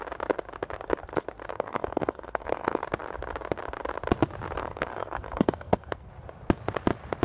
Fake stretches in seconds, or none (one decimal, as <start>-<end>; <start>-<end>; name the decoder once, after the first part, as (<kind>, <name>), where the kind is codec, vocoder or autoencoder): 1.5-2.8 (codec, SNAC); 4.6-6.1